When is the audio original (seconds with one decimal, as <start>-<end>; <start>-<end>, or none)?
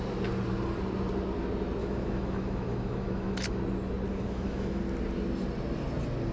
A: 0.0-1.8; 3.6-4.1; 4.8-6.3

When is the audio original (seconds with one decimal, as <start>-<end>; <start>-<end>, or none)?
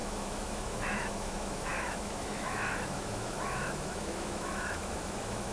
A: none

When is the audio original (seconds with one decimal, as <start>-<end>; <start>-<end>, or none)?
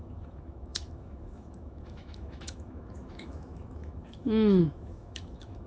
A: none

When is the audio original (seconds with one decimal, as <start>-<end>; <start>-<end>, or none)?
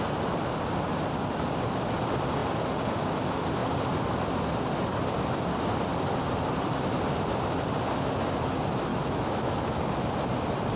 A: 0.0-8.9; 9.8-10.8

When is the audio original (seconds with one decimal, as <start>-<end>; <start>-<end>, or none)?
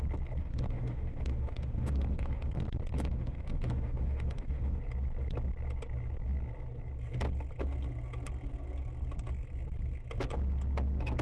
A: 0.0-0.4; 2.5-2.9; 4.8-11.2